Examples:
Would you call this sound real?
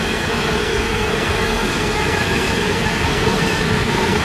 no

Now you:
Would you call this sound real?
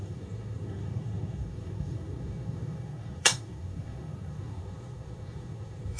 no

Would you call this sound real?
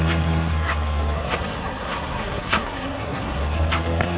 no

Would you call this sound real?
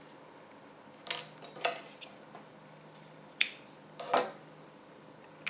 yes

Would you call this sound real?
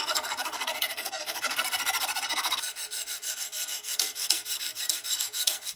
no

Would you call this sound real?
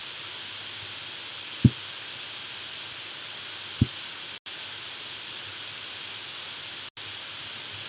yes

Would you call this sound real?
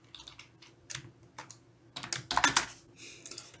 yes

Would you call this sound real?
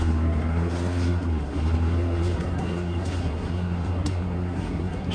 no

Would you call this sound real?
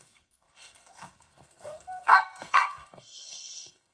no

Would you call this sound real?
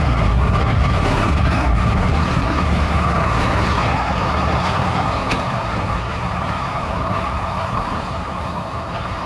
no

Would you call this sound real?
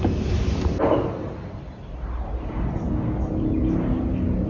yes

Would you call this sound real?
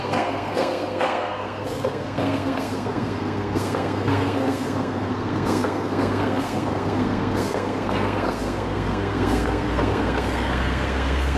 no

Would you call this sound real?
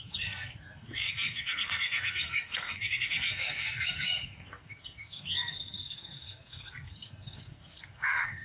no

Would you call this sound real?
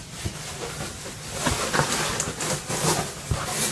yes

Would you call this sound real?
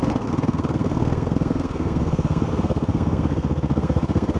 no